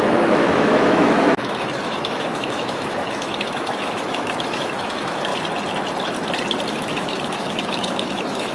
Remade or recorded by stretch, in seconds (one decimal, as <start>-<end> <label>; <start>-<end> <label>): 0.0-5.3 remade; 5.3-6.7 recorded; 6.7-8.5 remade